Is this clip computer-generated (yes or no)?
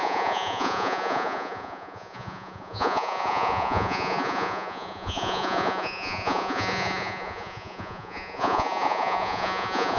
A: yes